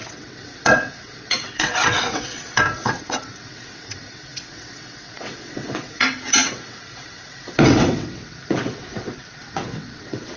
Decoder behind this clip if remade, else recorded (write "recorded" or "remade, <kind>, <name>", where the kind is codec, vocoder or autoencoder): remade, vocoder, WaveNeXt